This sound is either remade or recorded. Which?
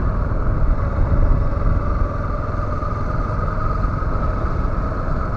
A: recorded